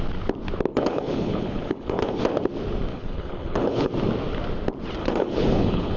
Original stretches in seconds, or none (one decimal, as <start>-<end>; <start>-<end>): 0.0-0.7; 2.2-2.9; 3.9-5.0